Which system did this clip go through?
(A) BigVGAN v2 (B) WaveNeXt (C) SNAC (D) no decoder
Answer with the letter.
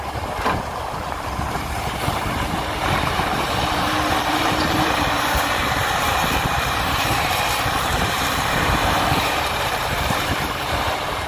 A